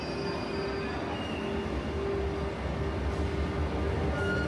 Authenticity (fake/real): real